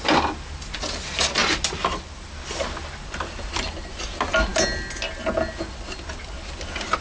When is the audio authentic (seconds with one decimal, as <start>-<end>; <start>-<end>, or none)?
0.0-7.0